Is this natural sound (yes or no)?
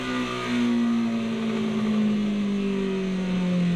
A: yes